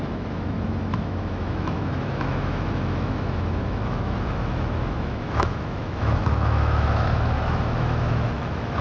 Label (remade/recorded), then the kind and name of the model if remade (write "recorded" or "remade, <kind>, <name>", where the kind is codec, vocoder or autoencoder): remade, autoencoder, DAC-VAE